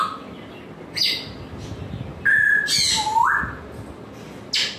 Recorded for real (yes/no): yes